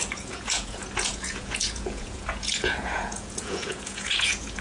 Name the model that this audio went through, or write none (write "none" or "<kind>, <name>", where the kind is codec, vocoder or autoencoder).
vocoder, Vocos